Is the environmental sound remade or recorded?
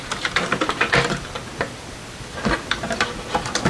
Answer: recorded